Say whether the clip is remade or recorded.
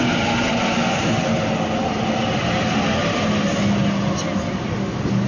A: recorded